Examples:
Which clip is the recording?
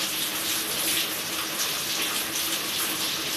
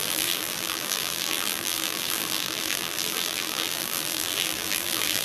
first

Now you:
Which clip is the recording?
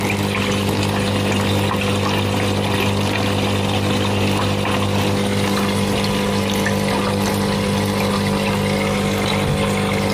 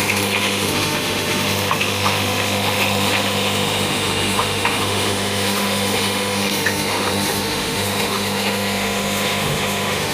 first